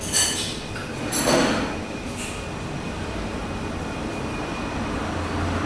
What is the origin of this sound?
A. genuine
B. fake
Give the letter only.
A